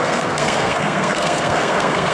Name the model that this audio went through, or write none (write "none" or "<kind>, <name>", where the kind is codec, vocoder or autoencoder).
codec, SNAC